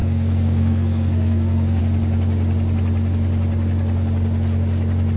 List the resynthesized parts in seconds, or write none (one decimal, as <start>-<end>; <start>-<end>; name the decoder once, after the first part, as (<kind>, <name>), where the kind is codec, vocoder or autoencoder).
0.0-1.8 (codec, SNAC)